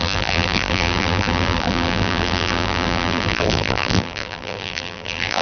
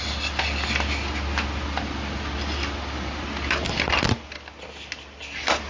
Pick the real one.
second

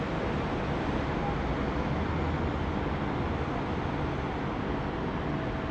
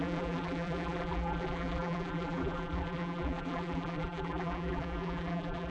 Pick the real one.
first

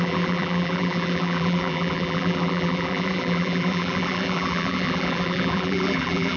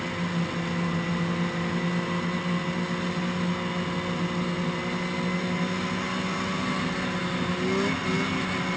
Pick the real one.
second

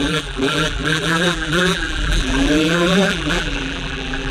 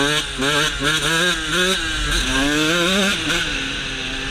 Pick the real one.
second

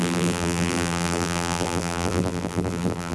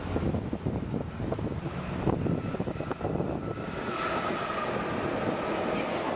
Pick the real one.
second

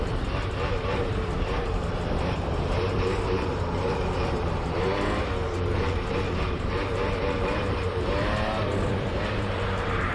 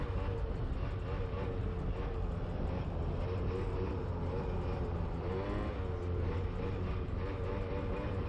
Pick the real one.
second